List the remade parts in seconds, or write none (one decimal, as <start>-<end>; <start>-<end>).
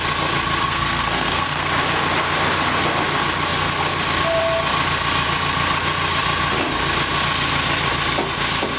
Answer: 0.6-1.7